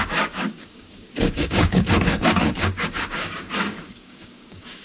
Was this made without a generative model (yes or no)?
no